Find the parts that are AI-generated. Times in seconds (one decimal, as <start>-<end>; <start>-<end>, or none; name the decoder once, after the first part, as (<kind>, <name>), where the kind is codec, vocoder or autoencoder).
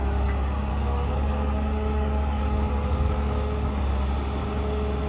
0.7-3.8 (codec, DAC)